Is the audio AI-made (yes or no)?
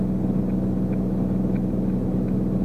no